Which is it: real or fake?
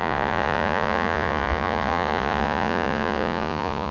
fake